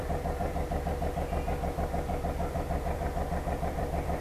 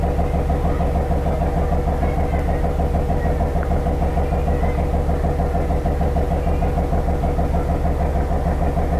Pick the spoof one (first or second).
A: first